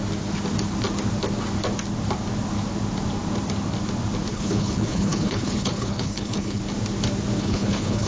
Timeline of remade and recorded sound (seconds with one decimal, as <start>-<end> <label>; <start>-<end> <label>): 0.0-4.3 recorded; 4.3-6.6 remade; 6.6-7.4 recorded; 7.4-8.1 remade